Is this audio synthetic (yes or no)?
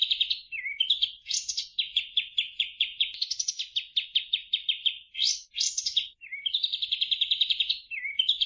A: no